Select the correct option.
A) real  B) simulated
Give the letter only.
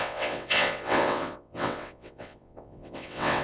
B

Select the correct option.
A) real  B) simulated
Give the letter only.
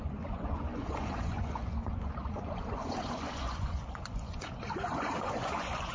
B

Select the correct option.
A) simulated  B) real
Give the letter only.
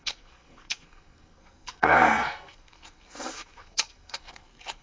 A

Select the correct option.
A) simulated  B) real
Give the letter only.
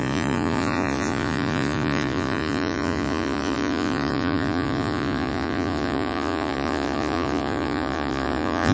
A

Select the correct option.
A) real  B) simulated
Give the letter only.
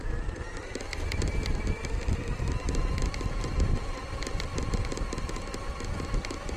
A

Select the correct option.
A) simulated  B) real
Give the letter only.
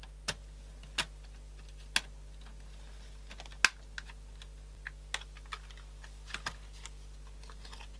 B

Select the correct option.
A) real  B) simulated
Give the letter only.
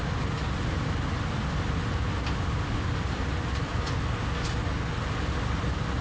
A